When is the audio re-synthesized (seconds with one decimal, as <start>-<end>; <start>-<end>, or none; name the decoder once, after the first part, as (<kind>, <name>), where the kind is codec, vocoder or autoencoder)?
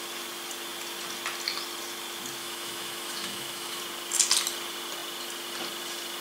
2.4-3.8 (autoencoder, DAC-VAE)